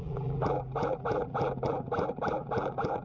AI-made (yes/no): yes